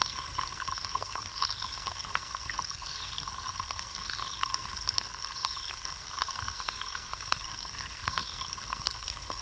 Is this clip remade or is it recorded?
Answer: remade